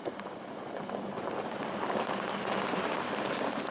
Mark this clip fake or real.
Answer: real